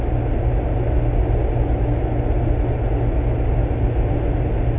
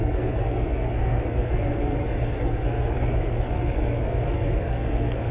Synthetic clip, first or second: second